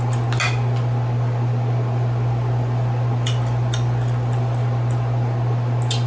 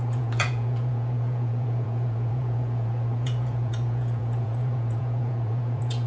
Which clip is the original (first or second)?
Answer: first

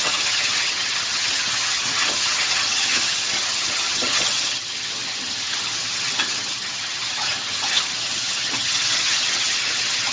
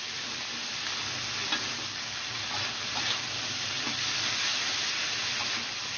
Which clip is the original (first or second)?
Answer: second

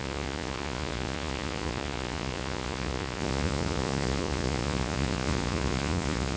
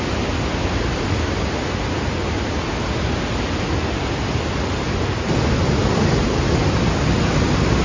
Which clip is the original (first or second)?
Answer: second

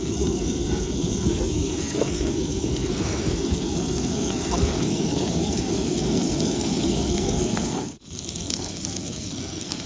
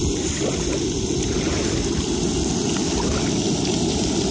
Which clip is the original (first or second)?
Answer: second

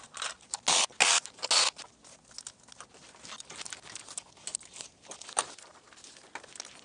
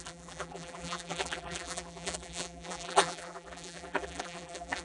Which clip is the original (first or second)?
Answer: first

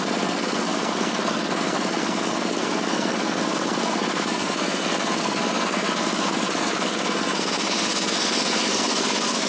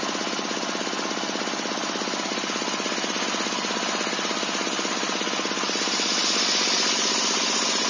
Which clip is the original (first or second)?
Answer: second